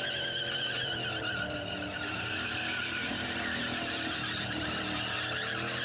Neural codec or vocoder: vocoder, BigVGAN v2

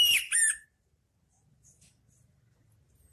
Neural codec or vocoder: none